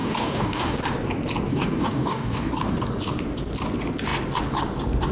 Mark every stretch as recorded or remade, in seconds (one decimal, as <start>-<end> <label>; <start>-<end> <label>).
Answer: 0.0-0.8 remade; 0.8-1.5 recorded; 1.5-2.5 remade; 2.5-5.1 recorded